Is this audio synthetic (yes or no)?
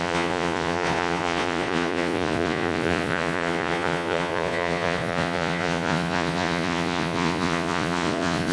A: yes